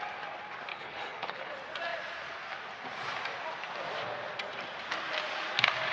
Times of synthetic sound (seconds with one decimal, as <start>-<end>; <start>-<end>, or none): 0.7-1.5